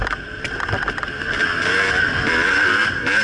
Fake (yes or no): no